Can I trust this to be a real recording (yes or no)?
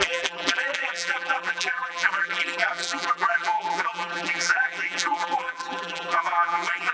no